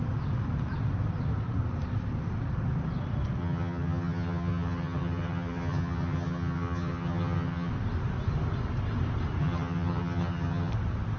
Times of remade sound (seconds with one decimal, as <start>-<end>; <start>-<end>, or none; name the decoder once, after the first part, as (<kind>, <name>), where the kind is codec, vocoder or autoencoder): 3.4-7.7 (vocoder, HiFi-GAN); 9.4-10.7